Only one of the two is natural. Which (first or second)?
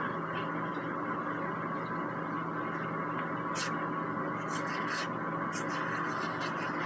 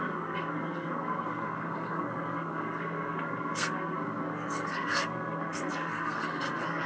first